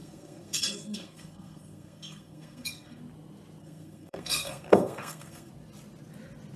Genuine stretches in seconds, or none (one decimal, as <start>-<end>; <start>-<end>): 3.0-3.6; 5.5-6.6